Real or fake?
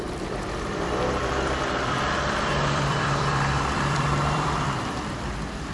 fake